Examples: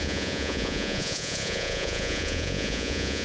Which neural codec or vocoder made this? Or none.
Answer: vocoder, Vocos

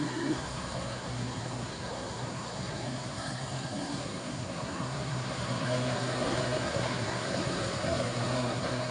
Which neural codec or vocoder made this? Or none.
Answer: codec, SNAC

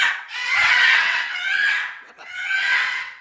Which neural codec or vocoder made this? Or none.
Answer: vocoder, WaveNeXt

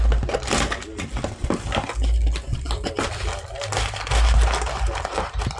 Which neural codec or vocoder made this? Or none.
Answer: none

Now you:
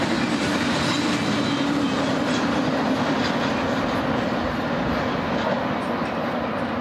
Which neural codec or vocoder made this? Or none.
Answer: none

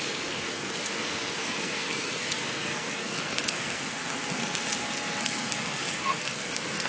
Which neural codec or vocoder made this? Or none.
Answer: codec, SNAC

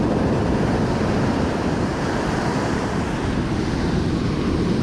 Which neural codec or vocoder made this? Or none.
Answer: none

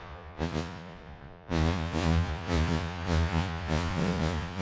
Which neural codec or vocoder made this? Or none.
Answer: vocoder, Vocos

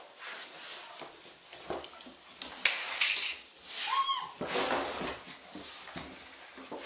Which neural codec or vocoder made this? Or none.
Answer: none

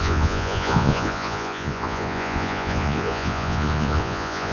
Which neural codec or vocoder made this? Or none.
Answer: vocoder, Vocos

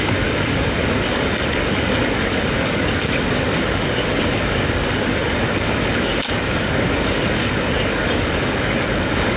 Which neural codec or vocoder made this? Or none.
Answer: codec, DAC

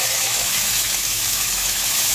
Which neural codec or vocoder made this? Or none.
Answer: autoencoder, DAC-VAE